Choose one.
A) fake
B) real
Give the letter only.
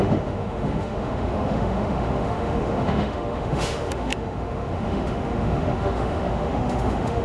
A